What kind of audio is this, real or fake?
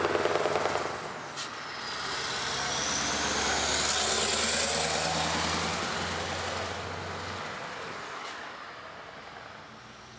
real